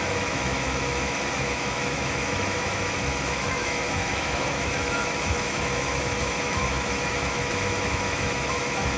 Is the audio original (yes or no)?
no